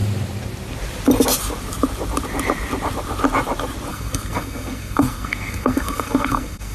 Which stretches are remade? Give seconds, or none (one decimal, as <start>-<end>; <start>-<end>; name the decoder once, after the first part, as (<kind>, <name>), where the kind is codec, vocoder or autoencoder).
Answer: 3.9-6.7 (codec, SNAC)